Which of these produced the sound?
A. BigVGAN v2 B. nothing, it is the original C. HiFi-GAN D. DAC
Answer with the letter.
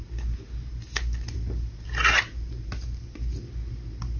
B